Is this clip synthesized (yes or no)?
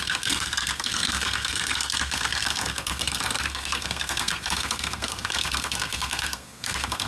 yes